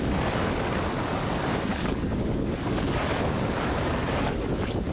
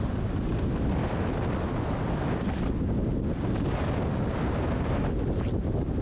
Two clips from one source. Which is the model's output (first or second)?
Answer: first